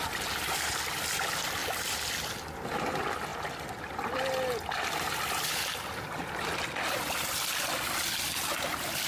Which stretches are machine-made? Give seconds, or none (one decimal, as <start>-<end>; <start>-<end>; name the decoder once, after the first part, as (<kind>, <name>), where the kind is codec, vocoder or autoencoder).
1.6-2.1 (vocoder, BigVGAN v2)